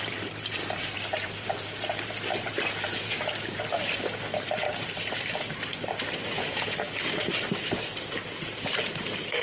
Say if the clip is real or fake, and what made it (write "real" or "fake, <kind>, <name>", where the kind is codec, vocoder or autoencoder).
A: fake, vocoder, BigVGAN v2